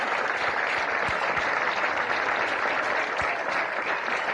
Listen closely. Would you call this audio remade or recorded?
recorded